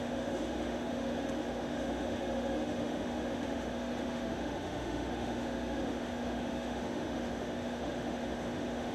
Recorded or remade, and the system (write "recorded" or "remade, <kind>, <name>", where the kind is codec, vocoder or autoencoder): remade, autoencoder, DAC-VAE